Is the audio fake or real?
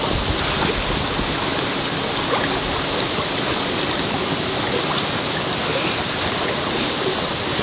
real